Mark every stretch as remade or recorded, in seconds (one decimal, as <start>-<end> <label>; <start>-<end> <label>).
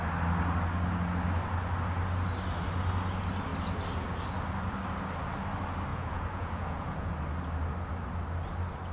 0.0-5.9 recorded; 5.9-7.1 remade; 7.1-8.9 recorded